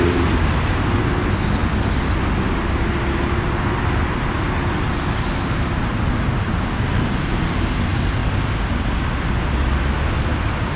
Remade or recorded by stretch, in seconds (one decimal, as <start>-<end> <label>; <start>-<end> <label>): 0.0-10.8 recorded